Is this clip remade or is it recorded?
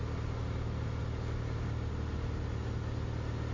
recorded